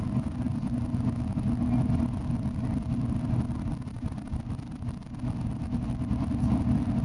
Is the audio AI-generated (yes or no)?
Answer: no